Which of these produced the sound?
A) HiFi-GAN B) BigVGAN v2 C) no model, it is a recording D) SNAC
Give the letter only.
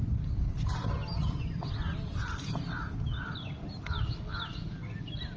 C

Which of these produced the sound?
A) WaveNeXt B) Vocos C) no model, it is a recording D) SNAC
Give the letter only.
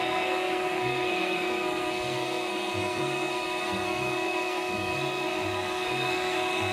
D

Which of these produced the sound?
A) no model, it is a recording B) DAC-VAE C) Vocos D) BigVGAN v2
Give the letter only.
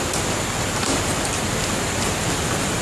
D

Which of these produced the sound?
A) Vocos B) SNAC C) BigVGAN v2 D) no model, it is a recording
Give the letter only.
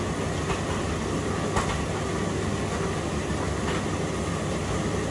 D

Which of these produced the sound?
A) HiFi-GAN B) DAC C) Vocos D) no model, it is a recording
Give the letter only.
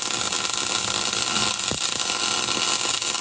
D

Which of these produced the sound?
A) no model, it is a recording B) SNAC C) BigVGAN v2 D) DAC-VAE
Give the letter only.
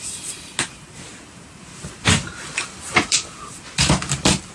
A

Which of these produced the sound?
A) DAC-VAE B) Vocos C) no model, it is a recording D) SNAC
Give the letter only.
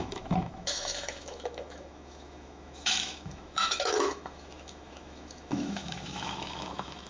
A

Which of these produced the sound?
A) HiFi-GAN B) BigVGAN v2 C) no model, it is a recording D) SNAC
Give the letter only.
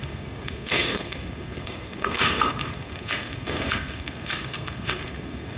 D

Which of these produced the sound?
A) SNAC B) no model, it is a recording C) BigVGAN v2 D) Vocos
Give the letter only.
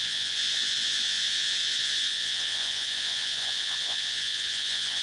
D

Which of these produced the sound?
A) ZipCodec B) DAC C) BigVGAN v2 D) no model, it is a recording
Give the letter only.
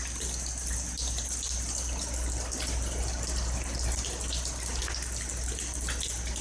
D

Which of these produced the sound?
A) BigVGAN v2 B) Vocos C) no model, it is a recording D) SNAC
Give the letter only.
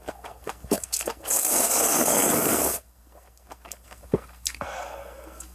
D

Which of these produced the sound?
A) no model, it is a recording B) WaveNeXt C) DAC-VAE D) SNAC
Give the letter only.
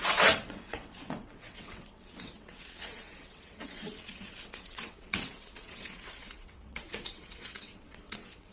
B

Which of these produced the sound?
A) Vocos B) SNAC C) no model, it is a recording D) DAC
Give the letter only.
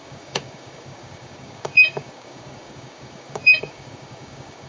D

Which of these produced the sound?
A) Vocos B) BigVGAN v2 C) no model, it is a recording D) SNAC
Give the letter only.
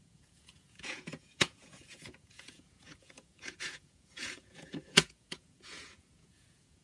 A